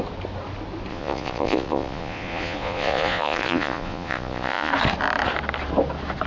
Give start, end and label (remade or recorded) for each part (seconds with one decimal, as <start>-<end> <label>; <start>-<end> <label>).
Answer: 0.0-0.9 recorded; 0.9-4.7 remade; 4.7-6.3 recorded